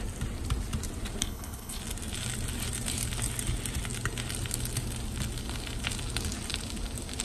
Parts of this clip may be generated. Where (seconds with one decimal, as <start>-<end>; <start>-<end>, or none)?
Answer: 1.2-1.8